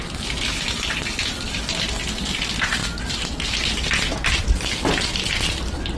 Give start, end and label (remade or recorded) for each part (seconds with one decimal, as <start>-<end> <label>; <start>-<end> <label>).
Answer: 0.0-6.0 recorded